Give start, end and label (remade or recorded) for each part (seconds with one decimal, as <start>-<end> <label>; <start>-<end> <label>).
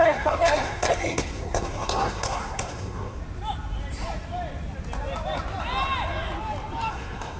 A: 0.0-3.2 remade; 3.2-6.9 recorded; 6.9-7.4 remade